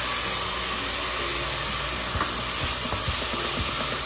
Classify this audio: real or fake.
real